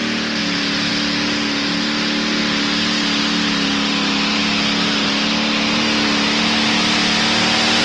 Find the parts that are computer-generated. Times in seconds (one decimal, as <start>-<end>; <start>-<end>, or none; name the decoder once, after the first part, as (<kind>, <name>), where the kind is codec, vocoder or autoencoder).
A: none